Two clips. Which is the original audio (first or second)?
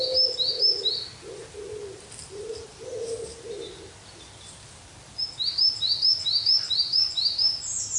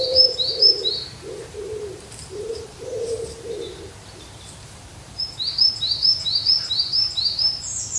first